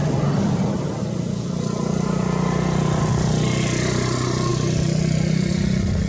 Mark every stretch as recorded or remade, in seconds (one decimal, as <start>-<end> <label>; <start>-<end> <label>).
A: 0.0-6.1 recorded